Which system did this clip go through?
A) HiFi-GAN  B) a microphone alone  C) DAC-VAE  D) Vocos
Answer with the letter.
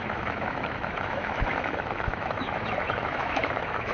C